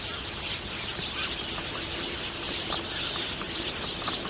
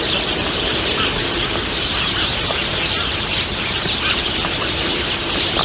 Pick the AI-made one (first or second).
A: second